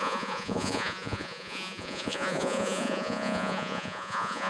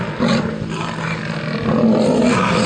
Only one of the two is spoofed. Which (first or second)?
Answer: first